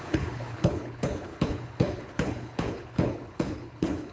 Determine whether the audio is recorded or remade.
remade